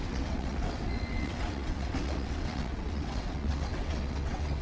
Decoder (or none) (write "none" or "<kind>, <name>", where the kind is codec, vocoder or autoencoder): vocoder, WaveNeXt